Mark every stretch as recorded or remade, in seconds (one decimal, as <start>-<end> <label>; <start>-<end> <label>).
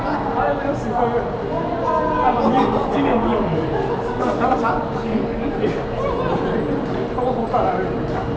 0.0-2.8 recorded; 2.8-5.6 remade; 5.6-8.4 recorded